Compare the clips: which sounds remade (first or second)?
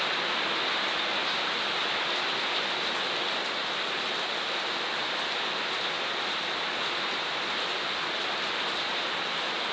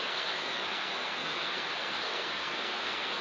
second